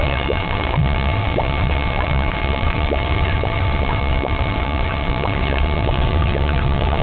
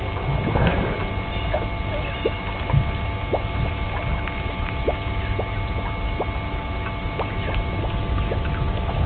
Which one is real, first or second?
second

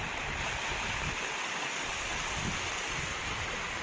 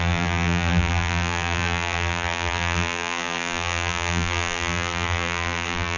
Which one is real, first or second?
first